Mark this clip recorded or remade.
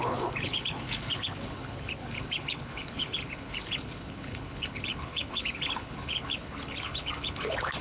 remade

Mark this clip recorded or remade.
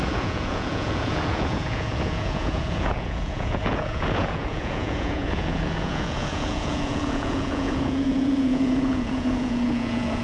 remade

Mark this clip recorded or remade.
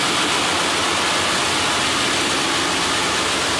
recorded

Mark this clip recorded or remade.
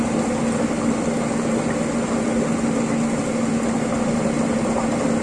recorded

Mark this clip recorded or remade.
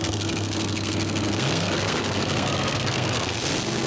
remade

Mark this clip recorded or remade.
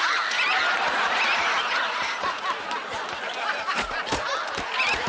recorded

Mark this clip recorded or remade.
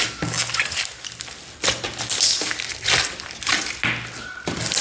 recorded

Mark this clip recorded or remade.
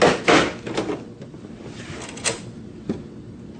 recorded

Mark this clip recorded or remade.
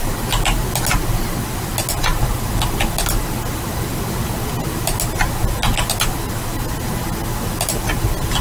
recorded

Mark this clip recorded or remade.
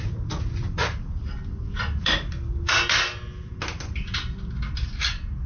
recorded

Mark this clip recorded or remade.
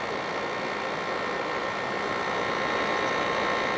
recorded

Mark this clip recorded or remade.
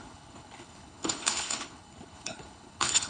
remade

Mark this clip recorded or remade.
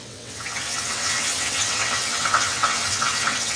remade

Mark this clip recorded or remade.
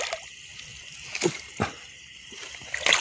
recorded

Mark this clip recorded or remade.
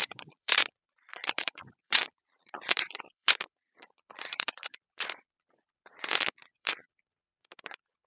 remade